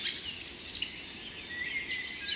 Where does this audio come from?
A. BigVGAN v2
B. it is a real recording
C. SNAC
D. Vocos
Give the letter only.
B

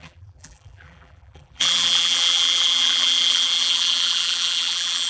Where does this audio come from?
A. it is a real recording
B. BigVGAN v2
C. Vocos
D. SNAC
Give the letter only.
B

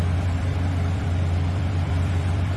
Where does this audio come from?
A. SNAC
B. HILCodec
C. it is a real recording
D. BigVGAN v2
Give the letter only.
D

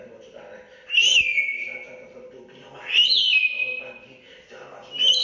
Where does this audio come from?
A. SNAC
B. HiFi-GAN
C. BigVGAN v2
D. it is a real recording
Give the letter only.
C